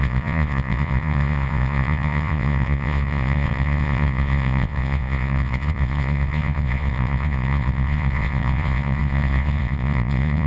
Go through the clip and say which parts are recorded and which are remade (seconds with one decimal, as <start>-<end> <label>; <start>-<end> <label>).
0.0-10.5 remade

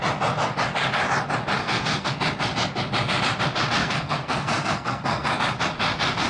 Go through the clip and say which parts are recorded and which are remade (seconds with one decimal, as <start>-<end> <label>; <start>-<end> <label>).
0.0-1.6 recorded; 1.6-2.1 remade; 2.1-3.8 recorded; 3.8-5.4 remade; 5.4-6.3 recorded